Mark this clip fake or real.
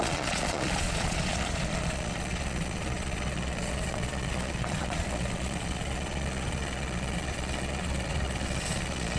fake